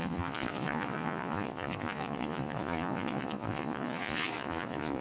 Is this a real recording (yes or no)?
no